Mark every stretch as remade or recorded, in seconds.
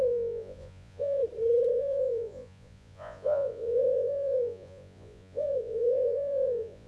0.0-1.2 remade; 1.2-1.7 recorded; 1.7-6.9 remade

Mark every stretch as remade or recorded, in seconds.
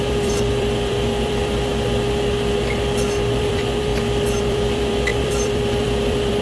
0.0-1.7 remade; 1.7-3.4 recorded; 3.4-3.9 remade; 3.9-4.4 recorded; 4.4-6.4 remade